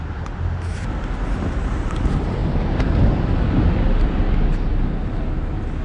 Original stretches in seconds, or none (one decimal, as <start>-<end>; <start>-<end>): 0.0-5.8